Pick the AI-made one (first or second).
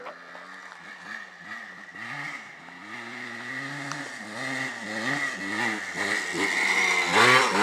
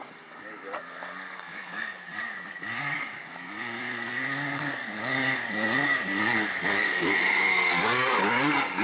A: second